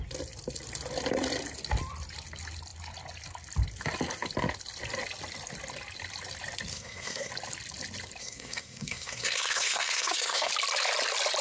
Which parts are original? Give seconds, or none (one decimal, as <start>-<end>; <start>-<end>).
0.0-6.7; 7.3-8.2; 10.5-11.4